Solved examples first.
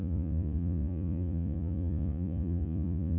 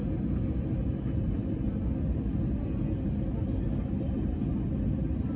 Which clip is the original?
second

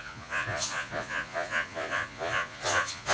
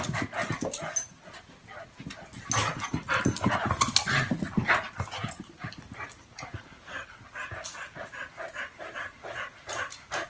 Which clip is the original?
second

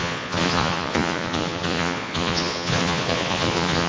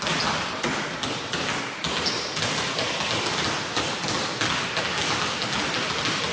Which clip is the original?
second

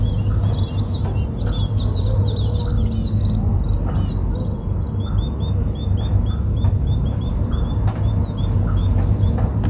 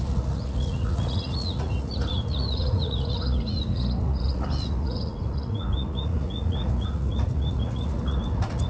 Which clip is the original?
first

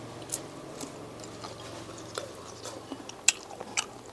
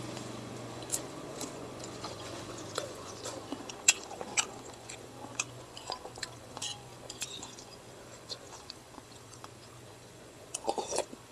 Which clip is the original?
first